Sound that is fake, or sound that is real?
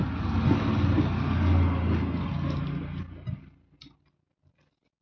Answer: real